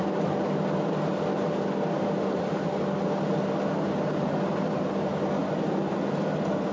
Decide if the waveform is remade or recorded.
recorded